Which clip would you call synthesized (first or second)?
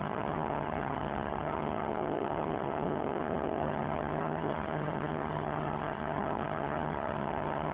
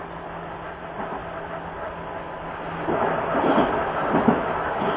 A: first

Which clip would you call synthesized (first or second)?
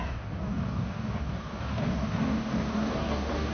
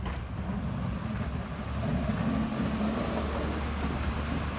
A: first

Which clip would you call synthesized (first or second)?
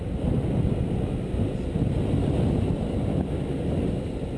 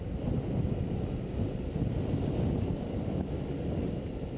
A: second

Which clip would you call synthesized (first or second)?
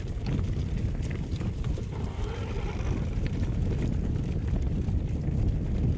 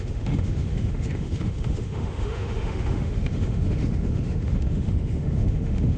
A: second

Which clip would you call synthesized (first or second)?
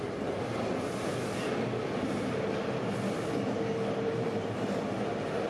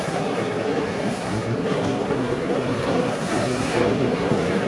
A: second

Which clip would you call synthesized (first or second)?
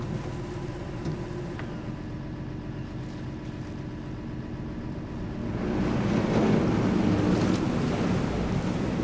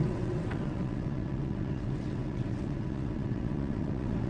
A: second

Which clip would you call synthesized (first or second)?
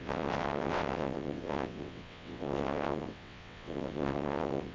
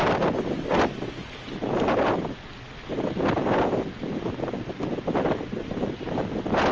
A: first